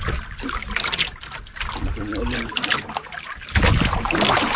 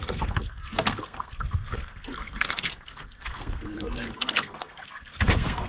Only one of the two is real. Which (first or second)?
first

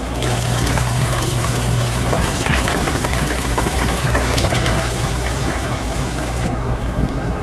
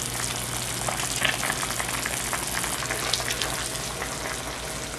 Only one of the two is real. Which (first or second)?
second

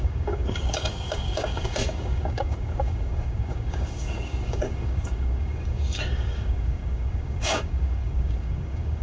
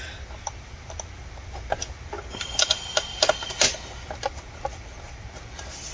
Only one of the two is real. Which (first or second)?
second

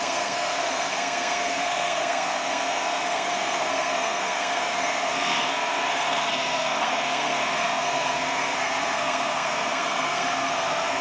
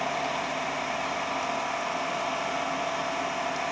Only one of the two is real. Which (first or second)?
second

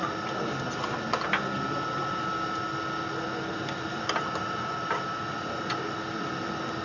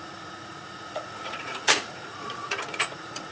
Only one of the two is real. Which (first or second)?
first